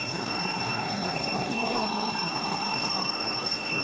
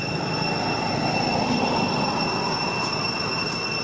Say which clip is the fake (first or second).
first